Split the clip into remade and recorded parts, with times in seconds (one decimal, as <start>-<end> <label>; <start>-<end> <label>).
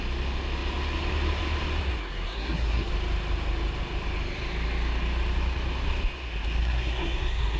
0.0-2.0 recorded; 2.0-2.9 remade; 2.9-6.6 recorded; 6.6-7.6 remade